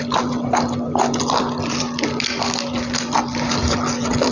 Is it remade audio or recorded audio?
recorded